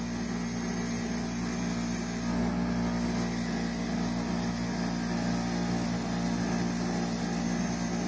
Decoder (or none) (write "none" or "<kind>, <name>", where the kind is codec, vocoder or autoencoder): none